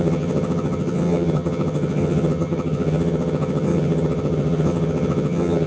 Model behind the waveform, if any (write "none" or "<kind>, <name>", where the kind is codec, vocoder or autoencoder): vocoder, HiFi-GAN